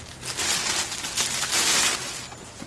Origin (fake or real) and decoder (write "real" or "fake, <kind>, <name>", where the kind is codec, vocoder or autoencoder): real